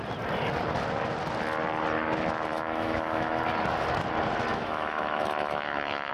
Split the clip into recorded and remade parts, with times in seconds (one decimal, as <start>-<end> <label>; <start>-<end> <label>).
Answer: 0.0-2.5 recorded; 2.5-3.4 remade; 3.4-4.5 recorded; 4.5-6.1 remade